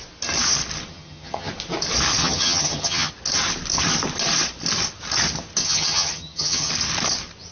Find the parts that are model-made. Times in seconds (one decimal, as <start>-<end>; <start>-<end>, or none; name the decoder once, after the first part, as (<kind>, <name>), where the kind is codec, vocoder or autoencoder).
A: 0.9-1.5 (vocoder, HiFi-GAN); 2.2-3.1; 5.6-6.7